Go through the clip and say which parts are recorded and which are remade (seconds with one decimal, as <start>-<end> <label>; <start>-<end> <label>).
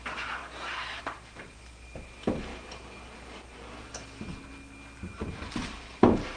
0.0-2.5 remade; 2.5-5.5 recorded; 5.5-6.4 remade